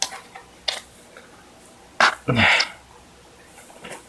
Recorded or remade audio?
recorded